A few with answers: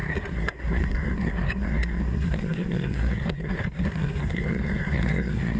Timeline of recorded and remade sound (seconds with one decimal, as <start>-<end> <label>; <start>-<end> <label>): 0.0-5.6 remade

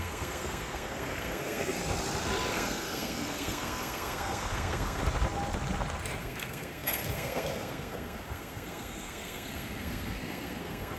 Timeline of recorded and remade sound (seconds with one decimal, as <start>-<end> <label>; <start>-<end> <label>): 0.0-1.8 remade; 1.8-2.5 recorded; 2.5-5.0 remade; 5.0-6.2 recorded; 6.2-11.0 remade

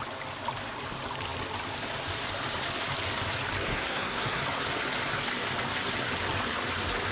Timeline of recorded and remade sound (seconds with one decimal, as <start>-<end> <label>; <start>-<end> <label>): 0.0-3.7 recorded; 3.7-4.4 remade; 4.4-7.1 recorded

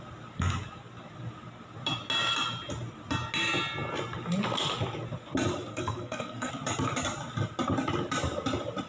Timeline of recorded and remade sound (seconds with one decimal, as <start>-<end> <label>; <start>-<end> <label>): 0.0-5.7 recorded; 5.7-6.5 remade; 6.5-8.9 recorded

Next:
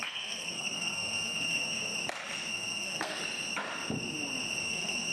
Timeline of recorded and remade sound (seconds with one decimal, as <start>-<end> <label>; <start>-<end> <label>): 0.0-1.9 remade; 1.9-2.5 recorded; 2.5-3.2 remade; 3.2-4.6 recorded; 4.6-5.1 remade

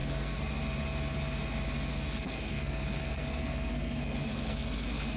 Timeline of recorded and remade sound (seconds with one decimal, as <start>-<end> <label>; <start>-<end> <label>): 0.0-0.5 remade; 0.5-1.9 recorded; 1.9-5.2 remade

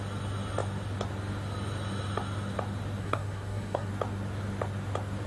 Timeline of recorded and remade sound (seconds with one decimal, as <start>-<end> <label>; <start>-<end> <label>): 0.0-3.0 recorded; 3.0-3.9 remade; 3.9-5.3 recorded

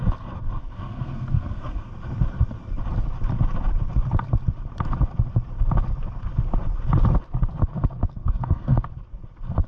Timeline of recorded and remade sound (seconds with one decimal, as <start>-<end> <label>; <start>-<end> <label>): 0.0-0.6 recorded; 0.6-1.9 remade; 1.9-8.0 recorded; 8.0-8.8 remade; 8.8-9.7 recorded